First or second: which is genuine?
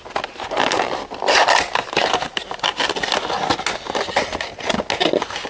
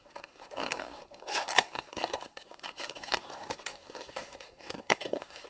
first